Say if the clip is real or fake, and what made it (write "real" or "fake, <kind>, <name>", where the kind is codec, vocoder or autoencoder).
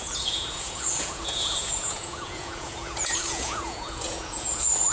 fake, vocoder, Vocos